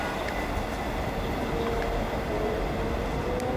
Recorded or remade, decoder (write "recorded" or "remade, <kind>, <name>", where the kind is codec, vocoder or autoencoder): recorded